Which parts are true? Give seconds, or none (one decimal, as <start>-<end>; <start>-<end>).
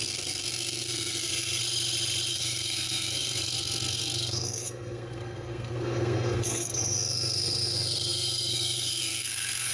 1.6-2.3